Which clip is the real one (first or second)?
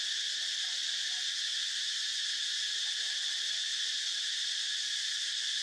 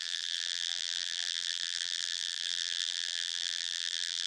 first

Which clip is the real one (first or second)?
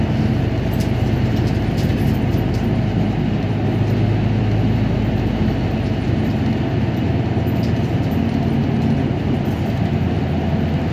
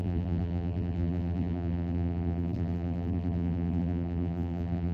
first